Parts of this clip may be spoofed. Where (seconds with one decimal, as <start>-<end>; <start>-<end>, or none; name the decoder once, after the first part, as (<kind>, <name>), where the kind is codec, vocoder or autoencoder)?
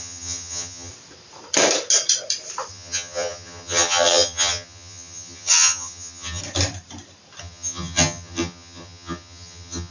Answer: 0.0-0.9 (vocoder, HiFi-GAN); 2.7-6.4; 7.4-9.9